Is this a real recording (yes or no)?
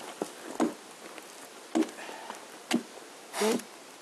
yes